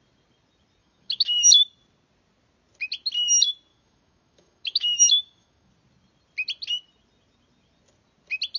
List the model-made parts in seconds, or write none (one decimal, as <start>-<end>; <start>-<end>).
0.8-1.5; 3.7-5.7